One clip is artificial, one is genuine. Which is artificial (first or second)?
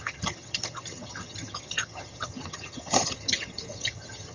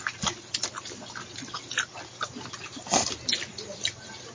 first